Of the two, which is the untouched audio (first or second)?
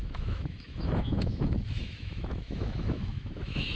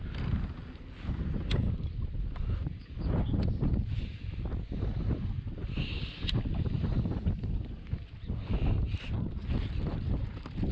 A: second